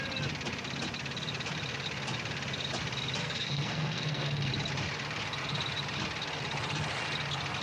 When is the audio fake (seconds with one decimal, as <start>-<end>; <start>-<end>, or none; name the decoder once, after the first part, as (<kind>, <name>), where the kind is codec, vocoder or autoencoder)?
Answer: 3.2-4.5 (codec, SNAC)